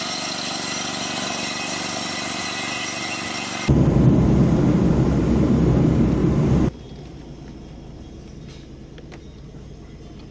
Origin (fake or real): real